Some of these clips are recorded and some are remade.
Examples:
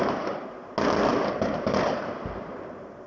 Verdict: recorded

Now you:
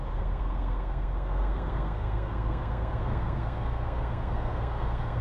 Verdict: remade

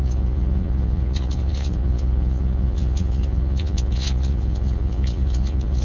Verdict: remade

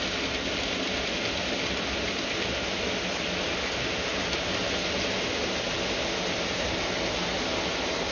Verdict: recorded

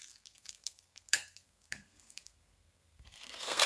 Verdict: remade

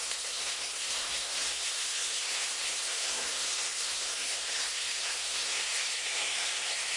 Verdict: remade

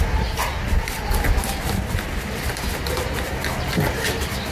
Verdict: recorded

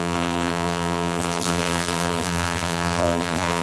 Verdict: remade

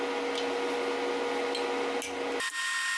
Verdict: recorded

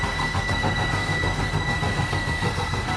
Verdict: remade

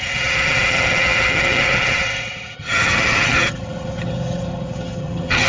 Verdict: remade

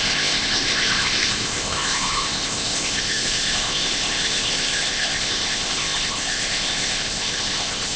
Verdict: remade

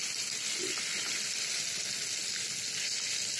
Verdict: recorded